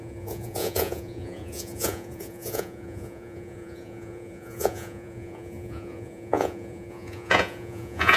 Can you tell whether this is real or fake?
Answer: fake